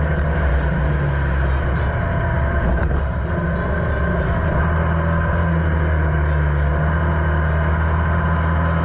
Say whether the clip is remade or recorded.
recorded